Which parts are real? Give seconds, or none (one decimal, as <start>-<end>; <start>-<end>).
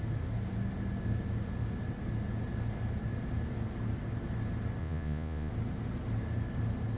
0.0-4.8; 5.5-7.0